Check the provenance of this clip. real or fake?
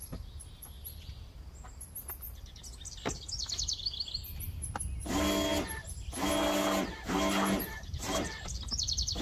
real